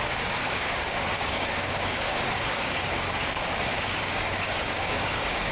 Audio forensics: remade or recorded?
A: remade